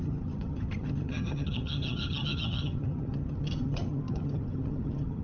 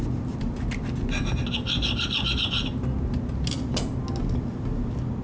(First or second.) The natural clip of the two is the second